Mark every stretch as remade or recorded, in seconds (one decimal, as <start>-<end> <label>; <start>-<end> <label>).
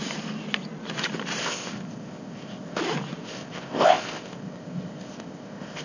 0.0-1.4 recorded; 1.4-2.8 remade; 2.8-3.2 recorded; 3.2-5.8 remade